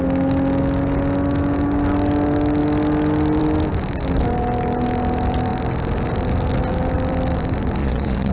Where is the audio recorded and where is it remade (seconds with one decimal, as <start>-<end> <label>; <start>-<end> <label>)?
0.0-7.8 recorded; 7.8-8.3 remade